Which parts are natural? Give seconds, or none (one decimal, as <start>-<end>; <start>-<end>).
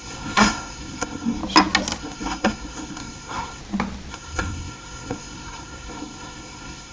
1.4-2.0; 3.6-4.1